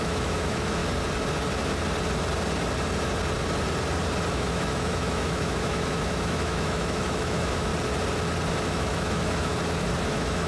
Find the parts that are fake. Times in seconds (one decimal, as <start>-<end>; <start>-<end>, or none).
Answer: 0.0-0.8; 4.3-7.7; 8.7-9.5; 10.1-10.5